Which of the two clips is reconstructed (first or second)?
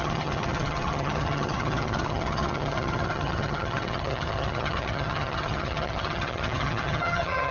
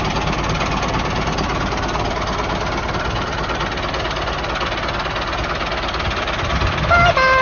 first